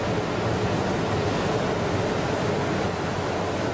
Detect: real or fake real